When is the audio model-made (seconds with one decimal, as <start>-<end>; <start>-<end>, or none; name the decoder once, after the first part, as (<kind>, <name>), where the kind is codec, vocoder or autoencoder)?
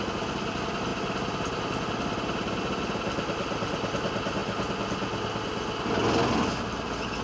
none